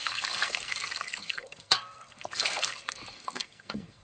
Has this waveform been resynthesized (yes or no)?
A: yes